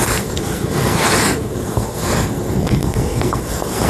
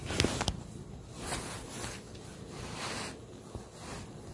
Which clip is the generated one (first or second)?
first